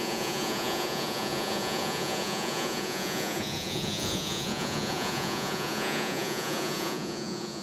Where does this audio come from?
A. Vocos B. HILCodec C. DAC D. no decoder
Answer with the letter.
A